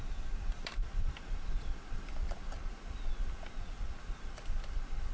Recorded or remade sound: recorded